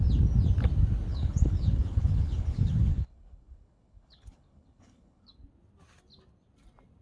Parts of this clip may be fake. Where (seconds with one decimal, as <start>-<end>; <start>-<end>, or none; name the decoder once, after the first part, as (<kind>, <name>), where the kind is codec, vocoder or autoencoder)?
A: 1.1-5.3 (codec, HILCodec)